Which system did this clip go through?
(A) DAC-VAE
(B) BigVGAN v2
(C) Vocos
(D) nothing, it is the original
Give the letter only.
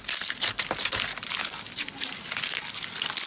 D